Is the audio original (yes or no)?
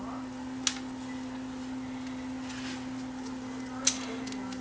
yes